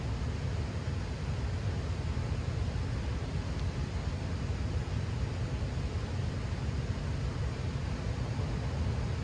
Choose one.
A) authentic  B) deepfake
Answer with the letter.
A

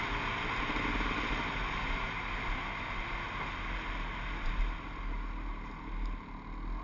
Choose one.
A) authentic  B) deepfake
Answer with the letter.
A